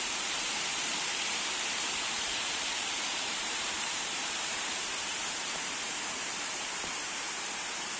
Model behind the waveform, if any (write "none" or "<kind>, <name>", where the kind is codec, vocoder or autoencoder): vocoder, BigVGAN v2